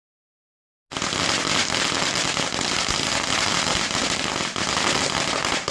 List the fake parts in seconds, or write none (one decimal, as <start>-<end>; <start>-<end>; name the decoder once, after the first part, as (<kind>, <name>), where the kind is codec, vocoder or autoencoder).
none